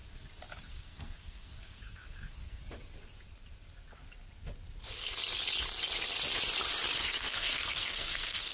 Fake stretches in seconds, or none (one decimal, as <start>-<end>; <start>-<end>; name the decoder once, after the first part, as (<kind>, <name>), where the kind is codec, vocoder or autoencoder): 0.6-2.6 (codec, SNAC); 7.0-8.5